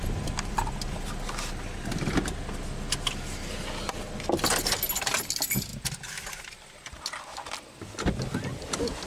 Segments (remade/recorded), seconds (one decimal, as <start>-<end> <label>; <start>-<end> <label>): 0.0-9.1 recorded